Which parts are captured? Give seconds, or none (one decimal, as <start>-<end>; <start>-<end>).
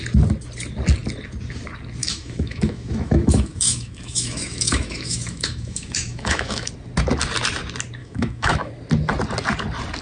0.0-2.0; 6.7-8.0; 8.7-10.0